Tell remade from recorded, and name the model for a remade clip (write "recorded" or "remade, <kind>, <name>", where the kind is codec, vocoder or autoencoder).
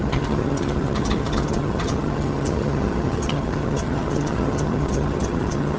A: remade, vocoder, HiFi-GAN